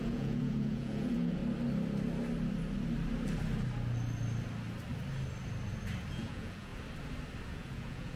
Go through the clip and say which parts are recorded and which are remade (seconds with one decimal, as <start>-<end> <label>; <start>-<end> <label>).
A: 0.0-1.4 remade; 1.4-6.1 recorded; 6.1-6.7 remade; 6.7-7.5 recorded; 7.5-8.2 remade